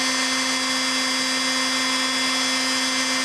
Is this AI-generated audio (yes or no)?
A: no